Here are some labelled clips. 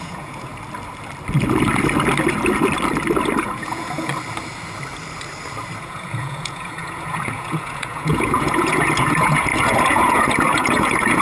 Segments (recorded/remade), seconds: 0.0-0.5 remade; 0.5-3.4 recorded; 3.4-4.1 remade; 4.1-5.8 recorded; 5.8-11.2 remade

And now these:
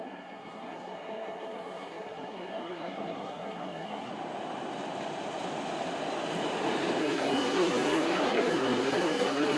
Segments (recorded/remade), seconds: 0.0-4.1 remade; 4.1-7.0 recorded; 7.0-9.6 remade

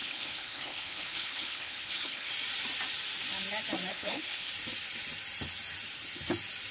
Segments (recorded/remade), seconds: 0.0-2.3 remade; 2.3-3.9 recorded; 3.9-4.5 remade; 4.5-6.7 recorded

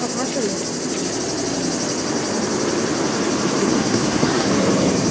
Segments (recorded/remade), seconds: 0.0-3.6 recorded; 3.6-4.5 remade; 4.5-5.1 recorded